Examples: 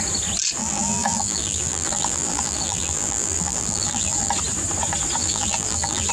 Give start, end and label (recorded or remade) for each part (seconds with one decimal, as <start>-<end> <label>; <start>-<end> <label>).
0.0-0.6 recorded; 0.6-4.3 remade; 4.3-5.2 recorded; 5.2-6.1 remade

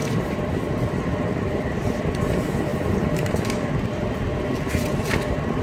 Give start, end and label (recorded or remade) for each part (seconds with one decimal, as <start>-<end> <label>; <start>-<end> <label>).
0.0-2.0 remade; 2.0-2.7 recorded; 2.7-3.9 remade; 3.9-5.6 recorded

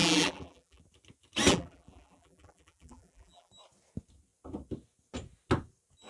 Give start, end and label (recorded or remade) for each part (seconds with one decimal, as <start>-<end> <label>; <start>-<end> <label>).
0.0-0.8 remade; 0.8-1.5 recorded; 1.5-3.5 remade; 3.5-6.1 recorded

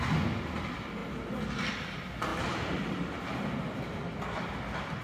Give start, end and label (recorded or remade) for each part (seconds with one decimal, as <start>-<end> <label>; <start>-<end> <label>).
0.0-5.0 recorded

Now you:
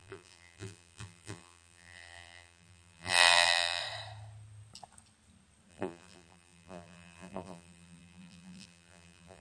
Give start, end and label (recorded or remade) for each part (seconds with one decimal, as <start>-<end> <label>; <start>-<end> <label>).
0.0-3.8 remade; 3.8-5.7 recorded; 5.7-9.4 remade

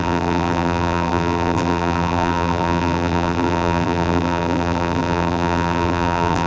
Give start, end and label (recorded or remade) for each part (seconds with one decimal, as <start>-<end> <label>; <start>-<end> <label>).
0.0-6.5 remade

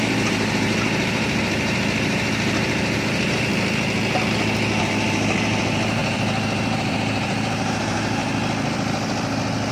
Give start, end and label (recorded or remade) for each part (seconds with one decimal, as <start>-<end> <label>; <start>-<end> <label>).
0.0-3.5 remade; 3.5-4.8 recorded; 4.8-8.2 remade; 8.2-9.7 recorded

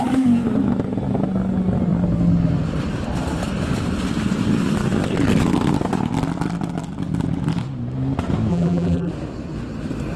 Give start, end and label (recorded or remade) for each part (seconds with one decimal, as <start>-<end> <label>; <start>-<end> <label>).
0.0-8.5 recorded; 8.5-9.1 remade; 9.1-10.2 recorded